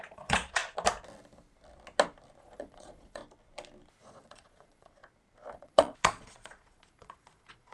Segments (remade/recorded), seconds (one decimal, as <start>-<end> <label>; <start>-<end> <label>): 0.0-0.6 remade; 0.6-2.4 recorded; 2.4-3.2 remade; 3.2-4.0 recorded; 4.0-4.9 remade; 4.9-5.5 recorded; 5.5-7.7 remade